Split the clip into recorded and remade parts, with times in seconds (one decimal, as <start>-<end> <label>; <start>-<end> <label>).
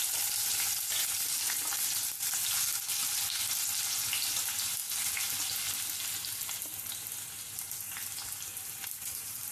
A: 0.0-9.5 recorded